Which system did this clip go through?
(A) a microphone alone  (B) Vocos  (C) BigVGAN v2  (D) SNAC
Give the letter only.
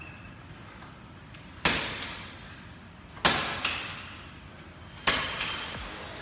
A